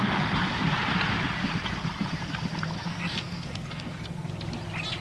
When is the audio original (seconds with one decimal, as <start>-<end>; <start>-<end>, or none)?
0.0-2.8; 4.3-5.0